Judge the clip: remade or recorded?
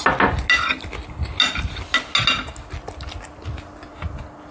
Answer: recorded